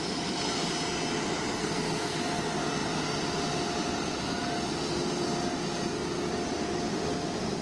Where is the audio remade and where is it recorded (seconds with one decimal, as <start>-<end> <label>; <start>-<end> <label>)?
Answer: 0.0-1.6 recorded; 1.6-2.2 remade; 2.2-7.6 recorded